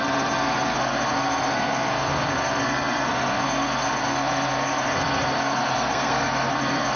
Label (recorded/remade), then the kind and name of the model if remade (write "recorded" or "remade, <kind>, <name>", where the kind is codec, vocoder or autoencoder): remade, codec, SNAC